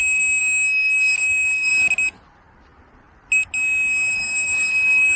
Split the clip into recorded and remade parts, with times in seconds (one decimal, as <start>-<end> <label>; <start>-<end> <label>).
0.0-0.4 remade; 0.4-1.2 recorded; 1.2-1.7 remade; 1.7-4.1 recorded; 4.1-5.2 remade